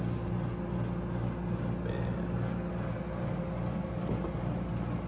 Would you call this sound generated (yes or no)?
no